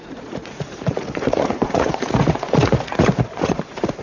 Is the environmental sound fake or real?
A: fake